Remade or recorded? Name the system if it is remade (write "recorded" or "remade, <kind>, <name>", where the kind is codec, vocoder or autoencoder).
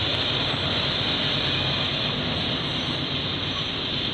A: recorded